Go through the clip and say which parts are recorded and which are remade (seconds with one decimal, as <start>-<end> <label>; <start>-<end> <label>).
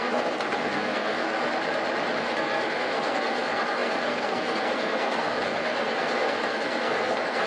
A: 0.0-1.5 remade; 1.5-2.2 recorded; 2.2-7.5 remade